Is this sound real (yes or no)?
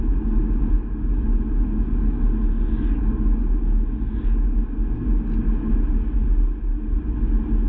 yes